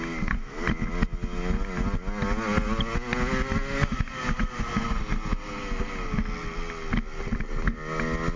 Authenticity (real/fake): real